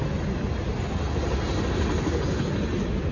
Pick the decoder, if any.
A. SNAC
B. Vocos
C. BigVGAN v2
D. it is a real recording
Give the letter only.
D